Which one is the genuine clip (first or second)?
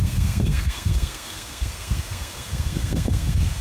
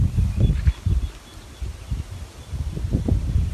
second